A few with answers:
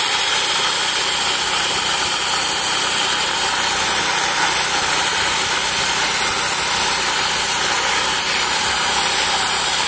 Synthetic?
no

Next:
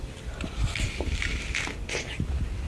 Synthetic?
no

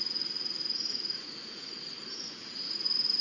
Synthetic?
yes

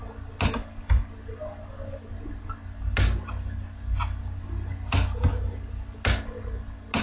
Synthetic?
no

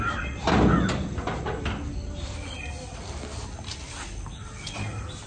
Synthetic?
no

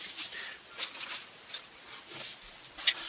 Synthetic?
no